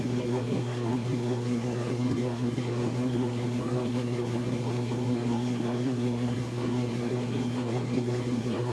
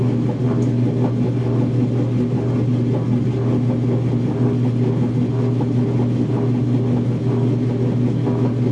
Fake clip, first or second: first